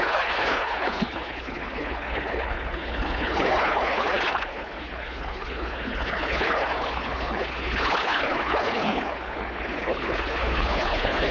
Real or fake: fake